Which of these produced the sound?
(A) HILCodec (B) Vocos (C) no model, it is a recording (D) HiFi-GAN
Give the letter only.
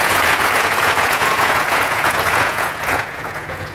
B